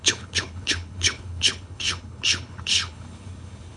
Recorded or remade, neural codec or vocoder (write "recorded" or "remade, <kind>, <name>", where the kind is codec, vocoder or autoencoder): remade, codec, HILCodec